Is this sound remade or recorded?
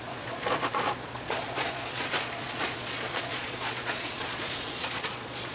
remade